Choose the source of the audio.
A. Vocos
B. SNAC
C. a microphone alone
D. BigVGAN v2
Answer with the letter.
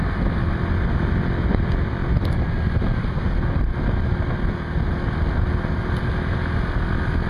C